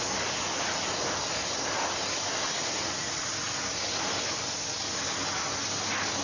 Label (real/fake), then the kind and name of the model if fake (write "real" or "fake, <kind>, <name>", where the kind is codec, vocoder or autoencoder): real